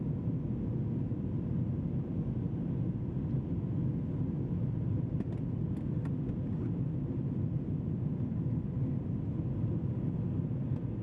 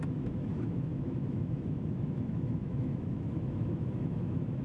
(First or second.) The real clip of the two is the first